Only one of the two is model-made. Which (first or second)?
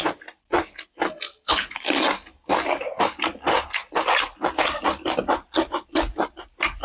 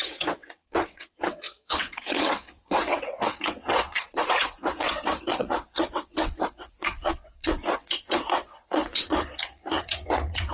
second